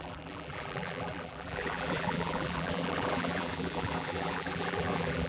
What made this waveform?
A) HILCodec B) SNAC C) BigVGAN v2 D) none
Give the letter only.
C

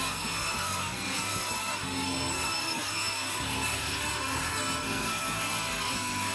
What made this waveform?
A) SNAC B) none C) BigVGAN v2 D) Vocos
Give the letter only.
A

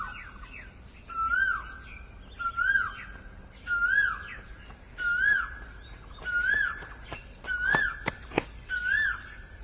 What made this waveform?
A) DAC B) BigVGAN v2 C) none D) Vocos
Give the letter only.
C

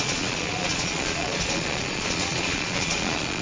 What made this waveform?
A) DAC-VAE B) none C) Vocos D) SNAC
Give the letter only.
C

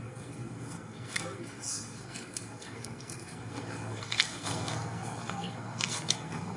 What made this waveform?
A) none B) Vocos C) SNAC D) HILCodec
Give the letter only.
C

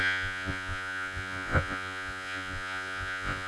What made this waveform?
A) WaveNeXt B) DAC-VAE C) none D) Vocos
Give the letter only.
D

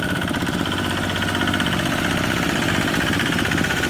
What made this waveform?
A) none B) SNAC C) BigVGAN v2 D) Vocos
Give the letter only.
A